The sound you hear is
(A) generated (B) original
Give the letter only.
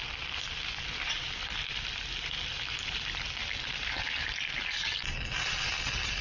B